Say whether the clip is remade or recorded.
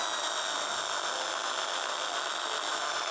recorded